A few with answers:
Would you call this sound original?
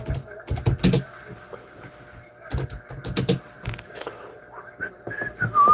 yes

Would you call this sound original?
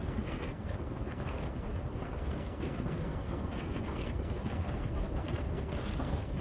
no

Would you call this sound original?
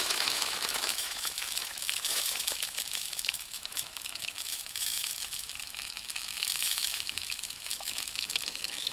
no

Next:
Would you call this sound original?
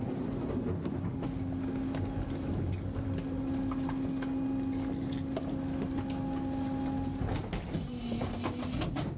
yes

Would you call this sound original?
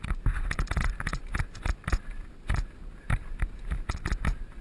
yes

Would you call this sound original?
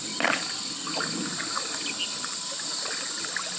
yes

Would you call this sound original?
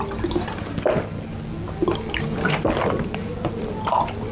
yes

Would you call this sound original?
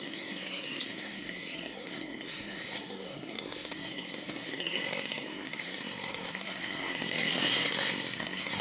no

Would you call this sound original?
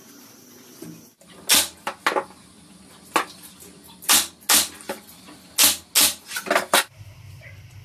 yes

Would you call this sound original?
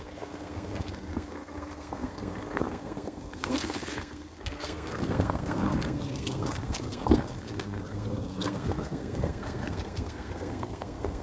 no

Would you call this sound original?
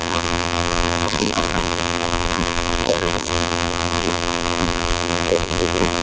no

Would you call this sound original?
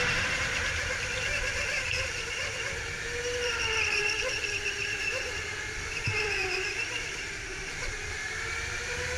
no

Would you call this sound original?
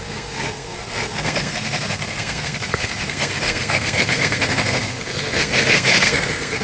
no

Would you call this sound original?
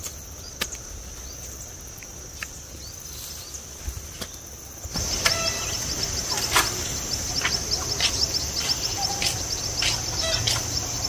yes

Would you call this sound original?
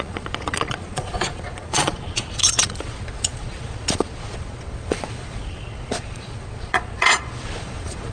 no